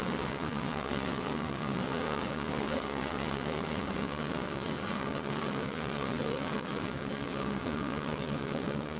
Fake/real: fake